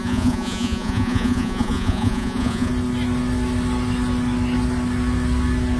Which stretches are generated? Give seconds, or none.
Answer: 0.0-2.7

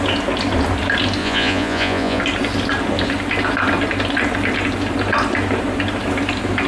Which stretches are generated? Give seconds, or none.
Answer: 1.2-2.2

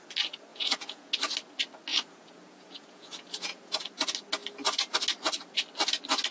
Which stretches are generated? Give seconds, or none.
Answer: 0.5-1.1; 1.9-3.8

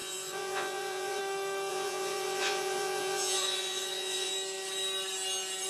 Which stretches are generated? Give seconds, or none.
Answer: 0.0-1.2; 1.7-4.3

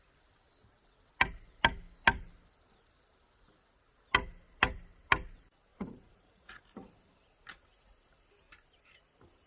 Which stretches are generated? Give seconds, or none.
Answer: 5.7-6.6

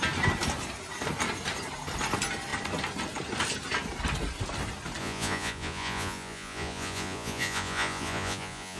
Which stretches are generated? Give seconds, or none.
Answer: 5.0-8.8